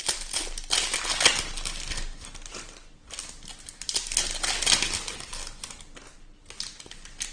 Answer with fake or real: real